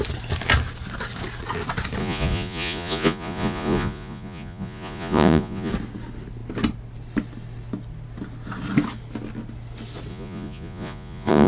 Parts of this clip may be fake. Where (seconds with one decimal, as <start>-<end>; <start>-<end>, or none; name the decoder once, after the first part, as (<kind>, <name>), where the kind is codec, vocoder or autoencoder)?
2.0-5.7 (vocoder, Vocos); 10.1-11.5